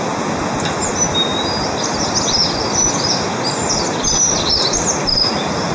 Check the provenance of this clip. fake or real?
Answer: real